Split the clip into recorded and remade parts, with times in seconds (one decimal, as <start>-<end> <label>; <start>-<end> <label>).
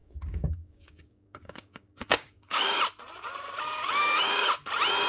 0.0-2.8 remade; 2.8-4.0 recorded; 4.0-4.5 remade; 4.5-5.1 recorded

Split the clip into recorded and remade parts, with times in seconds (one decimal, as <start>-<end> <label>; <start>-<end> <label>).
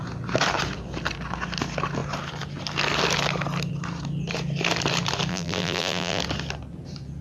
0.0-5.3 recorded; 5.3-6.2 remade; 6.2-7.2 recorded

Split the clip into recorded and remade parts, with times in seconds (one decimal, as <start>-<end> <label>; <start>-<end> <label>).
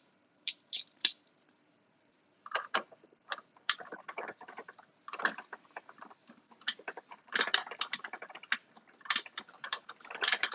0.0-8.5 remade; 8.5-9.4 recorded; 9.4-10.5 remade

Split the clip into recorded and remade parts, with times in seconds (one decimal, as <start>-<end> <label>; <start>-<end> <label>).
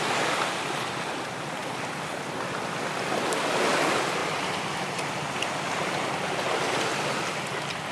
0.0-7.9 recorded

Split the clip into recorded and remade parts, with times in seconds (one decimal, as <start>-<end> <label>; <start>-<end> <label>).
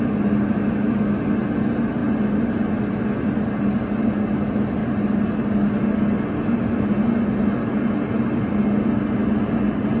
0.0-10.0 recorded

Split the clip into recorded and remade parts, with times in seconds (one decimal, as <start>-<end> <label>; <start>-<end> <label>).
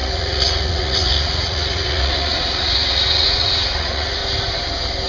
0.0-4.2 remade; 4.2-5.1 recorded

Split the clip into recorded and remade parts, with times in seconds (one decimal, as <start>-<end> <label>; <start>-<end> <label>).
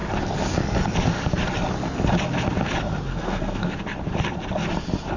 0.0-3.1 recorded; 3.1-3.8 remade; 3.8-5.2 recorded